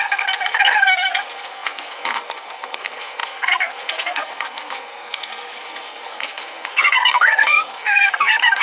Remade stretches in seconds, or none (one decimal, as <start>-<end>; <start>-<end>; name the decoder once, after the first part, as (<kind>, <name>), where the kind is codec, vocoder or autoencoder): 0.0-8.6 (codec, SNAC)